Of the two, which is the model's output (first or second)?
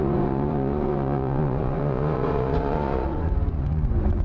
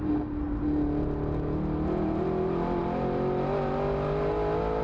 first